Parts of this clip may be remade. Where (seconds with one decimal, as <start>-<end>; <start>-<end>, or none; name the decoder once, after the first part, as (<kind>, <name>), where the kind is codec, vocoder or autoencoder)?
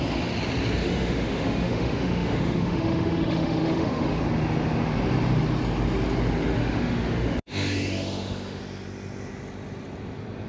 0.8-4.2 (autoencoder, DAC-VAE); 6.6-8.6